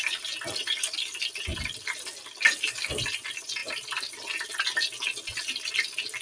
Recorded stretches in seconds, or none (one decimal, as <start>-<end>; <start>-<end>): 0.0-6.2